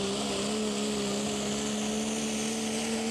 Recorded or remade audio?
recorded